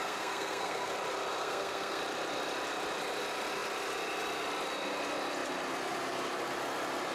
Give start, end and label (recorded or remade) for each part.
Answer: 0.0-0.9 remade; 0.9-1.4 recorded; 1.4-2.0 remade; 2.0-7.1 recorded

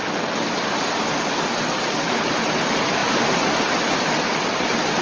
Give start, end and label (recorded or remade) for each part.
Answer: 0.0-5.0 recorded